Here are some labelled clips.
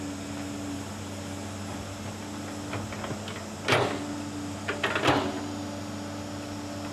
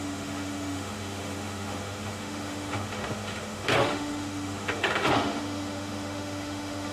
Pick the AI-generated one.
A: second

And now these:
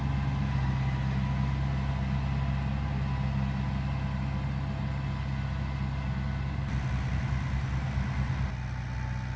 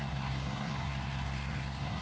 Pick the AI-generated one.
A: second